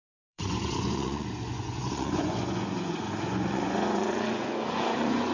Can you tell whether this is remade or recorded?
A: remade